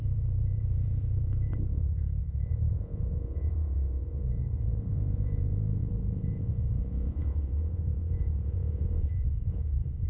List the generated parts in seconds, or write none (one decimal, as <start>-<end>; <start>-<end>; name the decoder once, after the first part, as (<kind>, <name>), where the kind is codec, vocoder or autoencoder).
0.0-10.1 (vocoder, Vocos)